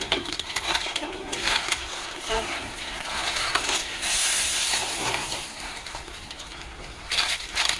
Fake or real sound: fake